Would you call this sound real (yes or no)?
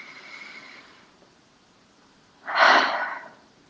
no